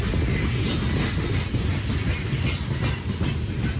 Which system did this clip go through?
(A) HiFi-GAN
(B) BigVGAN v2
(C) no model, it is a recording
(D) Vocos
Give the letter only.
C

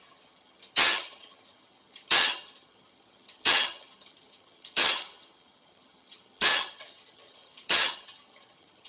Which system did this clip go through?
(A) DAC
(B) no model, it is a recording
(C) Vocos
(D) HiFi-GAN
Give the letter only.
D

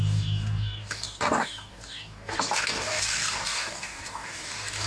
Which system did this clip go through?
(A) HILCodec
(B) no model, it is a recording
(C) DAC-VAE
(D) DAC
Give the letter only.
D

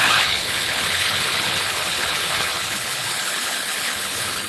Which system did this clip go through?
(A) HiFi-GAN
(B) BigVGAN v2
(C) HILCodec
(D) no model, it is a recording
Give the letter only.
C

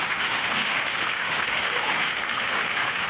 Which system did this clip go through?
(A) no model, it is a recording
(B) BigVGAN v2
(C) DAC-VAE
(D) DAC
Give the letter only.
C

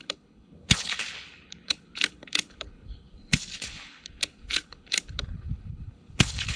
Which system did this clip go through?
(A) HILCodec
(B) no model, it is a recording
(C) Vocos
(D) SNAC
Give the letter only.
A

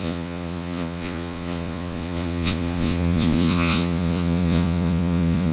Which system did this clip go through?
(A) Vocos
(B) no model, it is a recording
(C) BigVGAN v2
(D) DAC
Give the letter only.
A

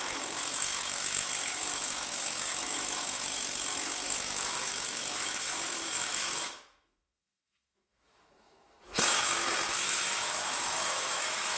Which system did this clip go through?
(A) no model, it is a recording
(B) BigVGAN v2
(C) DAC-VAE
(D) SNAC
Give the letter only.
C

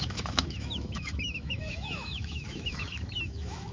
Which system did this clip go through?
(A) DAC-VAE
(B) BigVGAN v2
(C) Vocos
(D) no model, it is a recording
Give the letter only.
A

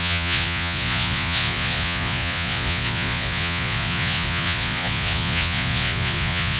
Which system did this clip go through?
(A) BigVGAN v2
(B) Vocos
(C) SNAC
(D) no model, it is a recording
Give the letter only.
B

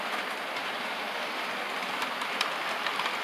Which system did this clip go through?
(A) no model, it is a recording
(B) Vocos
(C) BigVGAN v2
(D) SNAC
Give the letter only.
A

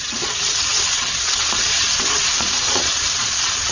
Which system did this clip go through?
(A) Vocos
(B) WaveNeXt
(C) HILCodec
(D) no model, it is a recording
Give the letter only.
A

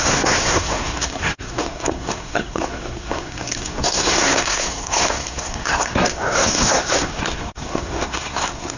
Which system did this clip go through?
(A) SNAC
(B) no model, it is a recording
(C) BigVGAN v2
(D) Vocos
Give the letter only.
A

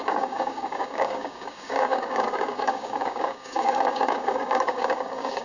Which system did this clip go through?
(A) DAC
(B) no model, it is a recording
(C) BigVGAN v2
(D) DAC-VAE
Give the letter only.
A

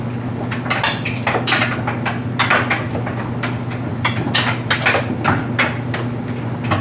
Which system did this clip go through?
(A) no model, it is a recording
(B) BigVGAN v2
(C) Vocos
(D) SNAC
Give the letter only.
A